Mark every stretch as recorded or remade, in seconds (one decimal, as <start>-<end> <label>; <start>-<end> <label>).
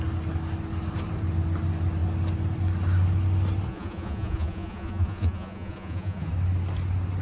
0.0-3.7 recorded; 3.7-6.3 remade; 6.3-7.2 recorded